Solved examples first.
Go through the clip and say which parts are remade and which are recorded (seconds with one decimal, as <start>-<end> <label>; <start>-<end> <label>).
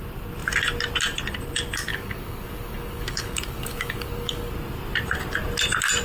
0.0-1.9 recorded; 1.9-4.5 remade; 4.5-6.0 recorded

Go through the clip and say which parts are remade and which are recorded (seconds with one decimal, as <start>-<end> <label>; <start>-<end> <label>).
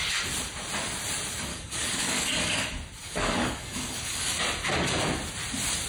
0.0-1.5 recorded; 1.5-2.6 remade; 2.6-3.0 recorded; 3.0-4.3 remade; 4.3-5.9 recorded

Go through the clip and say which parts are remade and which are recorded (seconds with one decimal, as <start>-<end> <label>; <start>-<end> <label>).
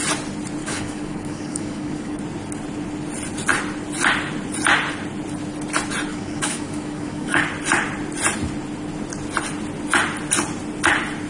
0.0-0.6 recorded; 0.6-2.2 remade; 2.2-6.1 recorded; 6.1-7.4 remade; 7.4-11.3 recorded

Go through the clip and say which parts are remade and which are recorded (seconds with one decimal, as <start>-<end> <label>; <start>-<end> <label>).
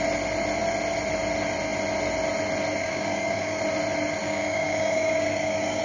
0.0-2.8 recorded; 2.8-3.6 remade; 3.6-4.2 recorded; 4.2-5.8 remade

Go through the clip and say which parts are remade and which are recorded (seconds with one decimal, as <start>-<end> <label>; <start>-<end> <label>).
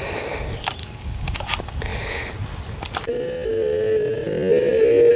0.0-0.8 recorded; 0.8-1.4 remade; 1.4-5.2 recorded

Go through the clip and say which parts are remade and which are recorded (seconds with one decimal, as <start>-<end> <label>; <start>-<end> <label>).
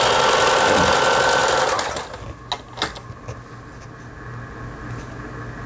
0.0-5.7 recorded